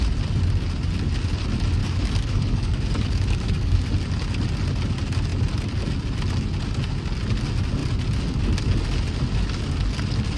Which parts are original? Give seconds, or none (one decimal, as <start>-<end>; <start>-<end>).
0.0-1.8; 3.9-10.4